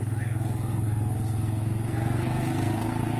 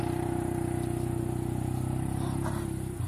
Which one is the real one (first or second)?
second